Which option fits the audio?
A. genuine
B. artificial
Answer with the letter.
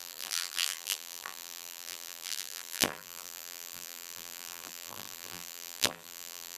B